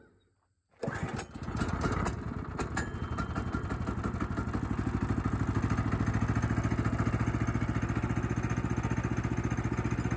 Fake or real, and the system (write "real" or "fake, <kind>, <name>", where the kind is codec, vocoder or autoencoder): real